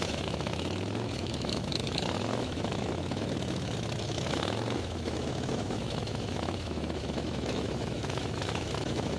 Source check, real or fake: fake